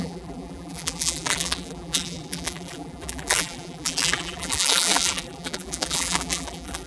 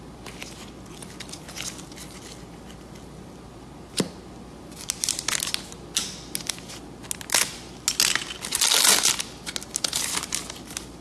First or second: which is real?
second